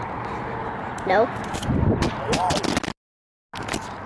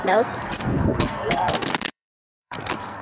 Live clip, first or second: first